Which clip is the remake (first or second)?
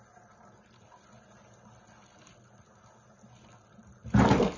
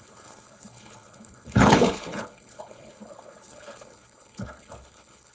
second